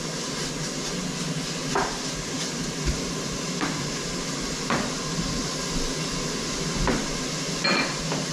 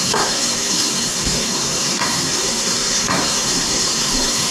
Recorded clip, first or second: first